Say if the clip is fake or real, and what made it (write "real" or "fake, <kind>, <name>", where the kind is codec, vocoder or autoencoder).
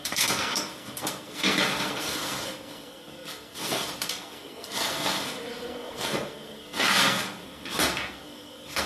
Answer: fake, codec, SNAC